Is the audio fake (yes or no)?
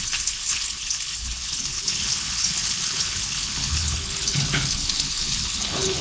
yes